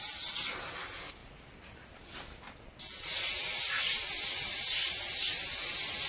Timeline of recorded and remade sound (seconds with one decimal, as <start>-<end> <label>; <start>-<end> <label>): 0.0-6.1 recorded